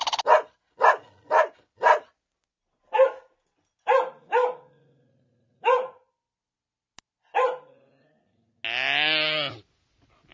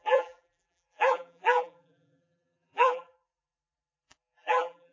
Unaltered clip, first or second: first